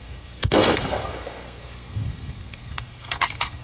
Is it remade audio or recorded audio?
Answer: remade